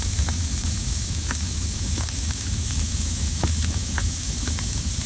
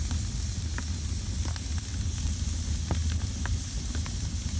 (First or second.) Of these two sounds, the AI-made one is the first